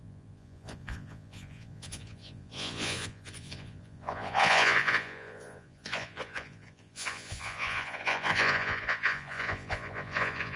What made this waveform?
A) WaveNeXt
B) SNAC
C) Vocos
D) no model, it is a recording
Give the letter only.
C